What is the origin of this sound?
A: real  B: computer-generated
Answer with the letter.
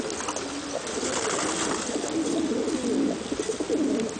A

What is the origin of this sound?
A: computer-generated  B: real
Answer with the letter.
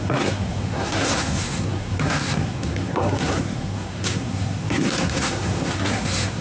A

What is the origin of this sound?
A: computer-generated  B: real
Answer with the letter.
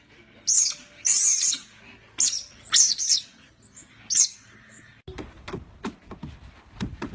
B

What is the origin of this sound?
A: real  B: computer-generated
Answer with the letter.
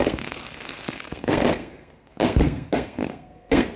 B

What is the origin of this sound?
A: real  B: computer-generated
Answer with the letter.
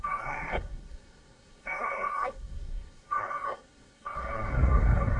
B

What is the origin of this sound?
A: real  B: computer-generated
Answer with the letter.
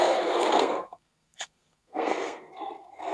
B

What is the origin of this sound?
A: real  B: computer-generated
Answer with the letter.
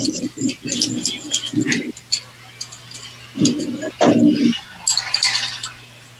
A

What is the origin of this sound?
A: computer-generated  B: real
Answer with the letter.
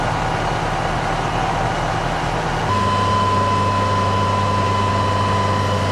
B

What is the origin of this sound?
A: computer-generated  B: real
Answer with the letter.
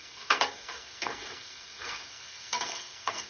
A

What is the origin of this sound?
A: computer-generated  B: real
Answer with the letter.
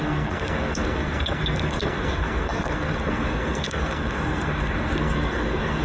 A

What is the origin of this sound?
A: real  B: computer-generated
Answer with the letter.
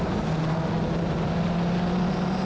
A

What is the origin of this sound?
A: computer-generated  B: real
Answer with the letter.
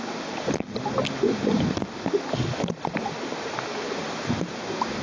B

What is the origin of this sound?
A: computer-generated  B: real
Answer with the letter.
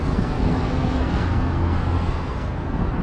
A